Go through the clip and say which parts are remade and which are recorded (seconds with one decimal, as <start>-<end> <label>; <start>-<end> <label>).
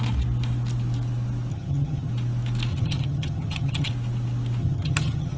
0.0-1.5 recorded; 1.5-2.1 remade; 2.1-2.7 recorded; 2.7-3.9 remade; 3.9-4.6 recorded; 4.6-5.4 remade